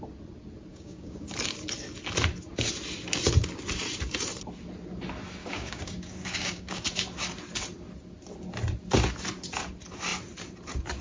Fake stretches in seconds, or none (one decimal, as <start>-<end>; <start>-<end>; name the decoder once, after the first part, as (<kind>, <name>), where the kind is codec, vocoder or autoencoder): 0.7-1.3 (codec, DAC); 5.4-6.8